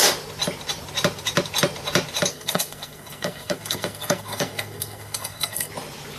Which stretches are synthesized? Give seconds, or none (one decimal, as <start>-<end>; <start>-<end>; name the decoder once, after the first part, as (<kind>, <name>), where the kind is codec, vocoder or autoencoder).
2.3-5.7 (codec, SNAC)